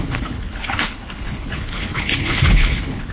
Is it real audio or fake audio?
fake